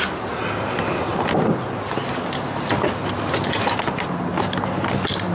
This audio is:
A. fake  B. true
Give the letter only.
B